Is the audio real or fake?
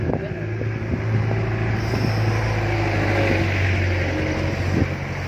real